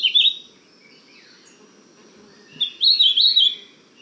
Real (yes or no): yes